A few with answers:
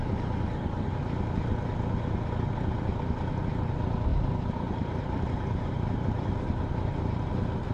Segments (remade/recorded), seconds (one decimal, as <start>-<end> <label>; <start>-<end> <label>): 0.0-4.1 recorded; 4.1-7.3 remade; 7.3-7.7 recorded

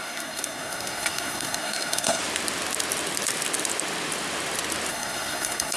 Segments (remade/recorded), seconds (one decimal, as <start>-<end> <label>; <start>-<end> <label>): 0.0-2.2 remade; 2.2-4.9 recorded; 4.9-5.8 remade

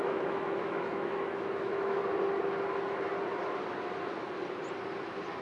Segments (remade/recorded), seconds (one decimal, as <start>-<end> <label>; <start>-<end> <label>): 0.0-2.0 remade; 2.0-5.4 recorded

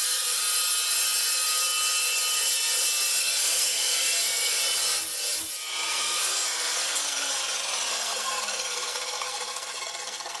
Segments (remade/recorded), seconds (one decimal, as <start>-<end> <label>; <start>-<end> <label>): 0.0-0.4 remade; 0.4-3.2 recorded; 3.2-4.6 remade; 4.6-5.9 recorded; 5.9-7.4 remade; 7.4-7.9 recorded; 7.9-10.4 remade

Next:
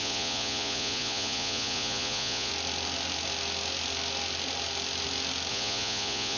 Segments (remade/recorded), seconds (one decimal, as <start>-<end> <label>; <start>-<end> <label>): 0.0-2.5 remade; 2.5-5.5 recorded; 5.5-6.4 remade